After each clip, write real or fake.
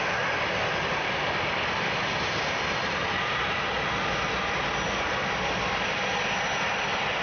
real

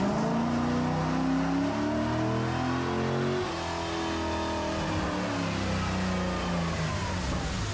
real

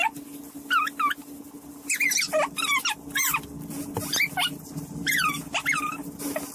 real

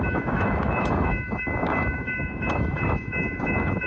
fake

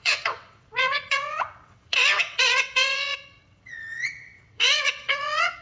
fake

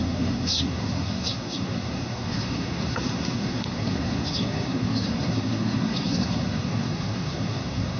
fake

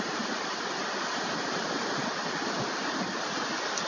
real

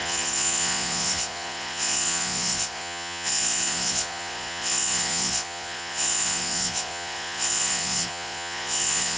fake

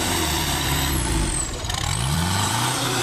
fake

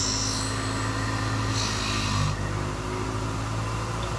real